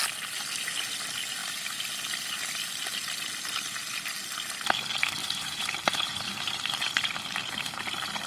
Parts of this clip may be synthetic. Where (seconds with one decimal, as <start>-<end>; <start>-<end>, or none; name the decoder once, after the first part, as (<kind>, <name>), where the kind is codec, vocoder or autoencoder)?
1.4-1.9 (vocoder, BigVGAN v2); 5.2-6.6